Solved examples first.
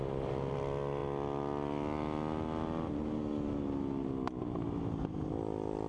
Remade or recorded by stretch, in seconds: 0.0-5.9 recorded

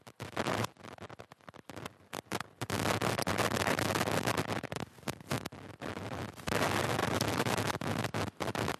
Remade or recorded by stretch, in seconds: 0.0-7.0 recorded; 7.0-7.7 remade; 7.7-8.8 recorded

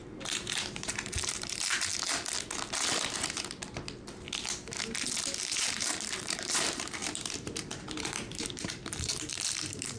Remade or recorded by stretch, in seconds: 0.0-1.9 remade; 1.9-5.4 recorded; 5.4-10.0 remade

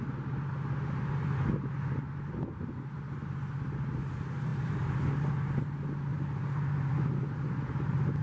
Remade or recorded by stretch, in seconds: 0.0-4.5 recorded; 4.5-5.1 remade; 5.1-6.1 recorded; 6.1-7.6 remade; 7.6-8.2 recorded

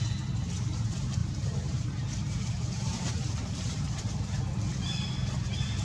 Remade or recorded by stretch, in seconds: 0.0-1.2 recorded; 1.2-4.0 remade; 4.0-5.8 recorded

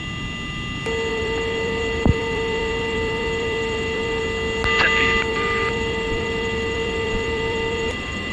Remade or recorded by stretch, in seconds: 0.0-1.1 recorded; 1.1-4.2 remade; 4.2-5.3 recorded; 5.3-8.3 remade

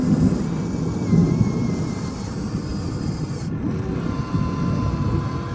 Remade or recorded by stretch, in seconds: 0.0-5.5 recorded

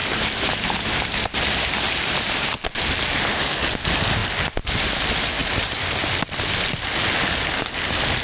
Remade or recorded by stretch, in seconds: 0.0-3.4 remade; 3.4-5.4 recorded; 5.4-6.1 remade; 6.1-8.2 recorded